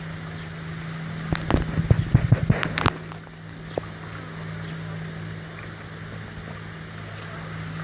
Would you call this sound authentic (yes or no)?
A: yes